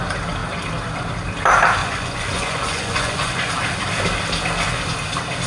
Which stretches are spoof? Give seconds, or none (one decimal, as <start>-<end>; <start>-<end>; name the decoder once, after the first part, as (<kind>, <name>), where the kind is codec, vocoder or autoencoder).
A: 1.8-3.5 (vocoder, Vocos)